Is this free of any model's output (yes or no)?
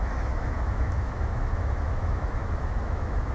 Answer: no